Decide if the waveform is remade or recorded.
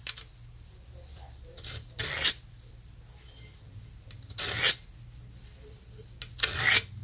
recorded